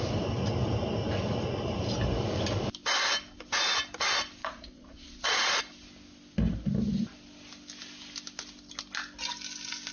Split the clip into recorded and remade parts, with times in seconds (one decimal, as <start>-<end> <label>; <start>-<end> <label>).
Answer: 0.0-4.4 recorded; 4.4-5.6 remade; 5.6-9.9 recorded